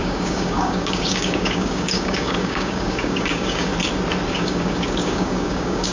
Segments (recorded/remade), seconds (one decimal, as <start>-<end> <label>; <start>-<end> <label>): 0.0-3.7 remade; 3.7-4.3 recorded; 4.3-5.9 remade